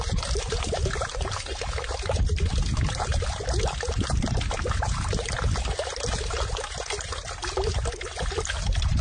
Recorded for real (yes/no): yes